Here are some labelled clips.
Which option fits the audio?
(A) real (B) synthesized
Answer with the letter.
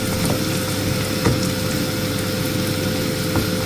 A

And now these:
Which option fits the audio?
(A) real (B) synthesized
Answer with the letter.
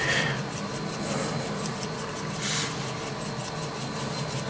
A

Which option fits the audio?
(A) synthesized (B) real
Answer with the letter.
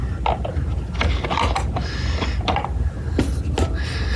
B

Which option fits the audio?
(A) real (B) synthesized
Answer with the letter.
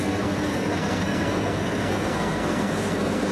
B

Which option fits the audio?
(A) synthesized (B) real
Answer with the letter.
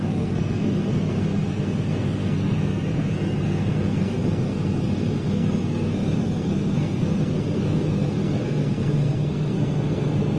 A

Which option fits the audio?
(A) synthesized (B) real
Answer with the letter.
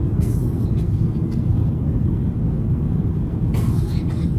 A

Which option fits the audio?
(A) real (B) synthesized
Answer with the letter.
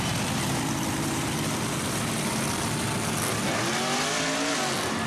A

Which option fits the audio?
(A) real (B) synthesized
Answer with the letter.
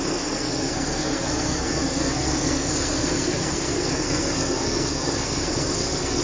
B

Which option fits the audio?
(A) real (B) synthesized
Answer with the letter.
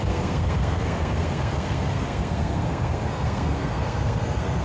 B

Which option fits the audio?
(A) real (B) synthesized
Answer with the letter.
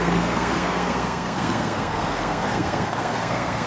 B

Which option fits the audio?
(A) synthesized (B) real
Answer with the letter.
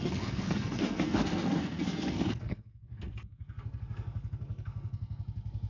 A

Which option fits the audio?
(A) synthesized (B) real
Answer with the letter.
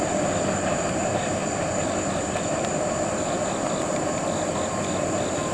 B